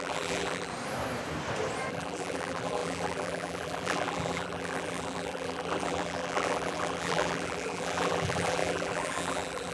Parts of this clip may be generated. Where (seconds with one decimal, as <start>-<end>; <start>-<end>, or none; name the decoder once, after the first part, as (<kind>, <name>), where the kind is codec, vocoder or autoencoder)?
0.0-0.7 (vocoder, BigVGAN v2); 1.9-9.7